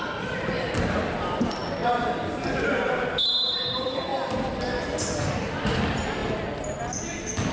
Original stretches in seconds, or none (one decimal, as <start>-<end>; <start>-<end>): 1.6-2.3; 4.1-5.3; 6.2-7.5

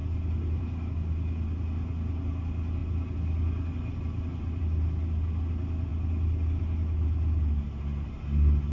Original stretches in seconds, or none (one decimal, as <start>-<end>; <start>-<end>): 0.0-8.7

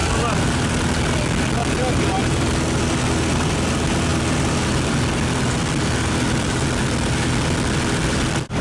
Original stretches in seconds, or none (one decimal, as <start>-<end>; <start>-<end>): 0.0-8.6

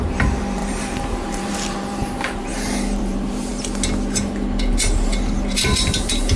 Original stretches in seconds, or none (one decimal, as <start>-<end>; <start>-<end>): 2.5-3.0; 3.5-4.7